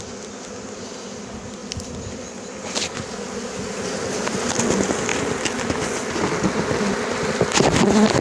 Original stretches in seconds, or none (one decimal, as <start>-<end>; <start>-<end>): 0.0-8.2